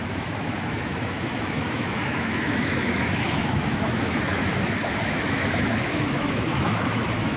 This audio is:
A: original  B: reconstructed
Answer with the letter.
B